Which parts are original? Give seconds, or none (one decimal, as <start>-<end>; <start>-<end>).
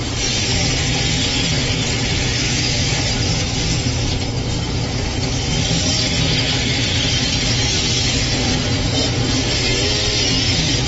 0.0-2.4; 3.0-10.9